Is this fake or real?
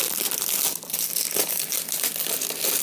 real